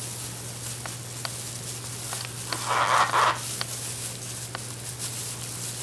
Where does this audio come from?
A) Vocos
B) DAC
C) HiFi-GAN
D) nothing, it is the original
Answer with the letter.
D